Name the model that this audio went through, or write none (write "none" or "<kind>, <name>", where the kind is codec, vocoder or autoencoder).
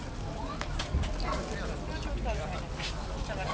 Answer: none